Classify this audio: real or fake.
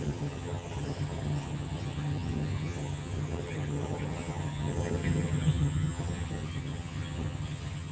fake